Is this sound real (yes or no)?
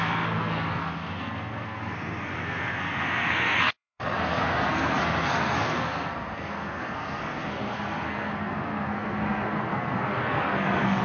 no